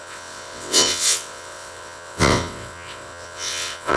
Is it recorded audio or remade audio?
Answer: remade